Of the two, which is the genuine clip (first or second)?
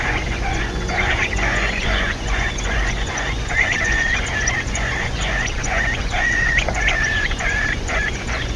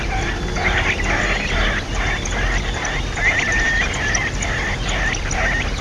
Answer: second